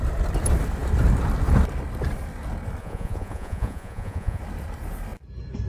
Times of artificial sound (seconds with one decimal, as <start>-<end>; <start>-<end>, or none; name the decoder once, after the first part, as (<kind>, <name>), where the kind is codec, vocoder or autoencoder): 2.8-4.4 (vocoder, Vocos)